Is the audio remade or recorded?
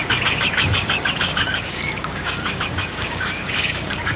remade